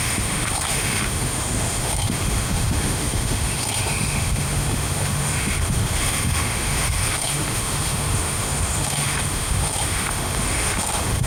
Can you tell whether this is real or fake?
fake